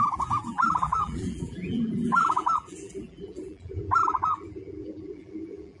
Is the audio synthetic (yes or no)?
yes